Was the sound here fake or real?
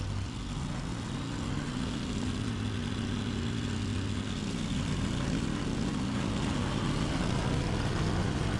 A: real